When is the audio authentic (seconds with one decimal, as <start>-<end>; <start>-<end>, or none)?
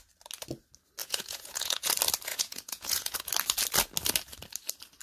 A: 0.0-1.0; 1.9-2.3; 3.3-5.0